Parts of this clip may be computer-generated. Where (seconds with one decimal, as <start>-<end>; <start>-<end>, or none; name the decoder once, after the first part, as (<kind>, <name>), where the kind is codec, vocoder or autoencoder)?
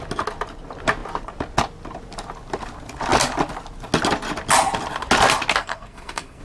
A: 5.6-6.4 (codec, SNAC)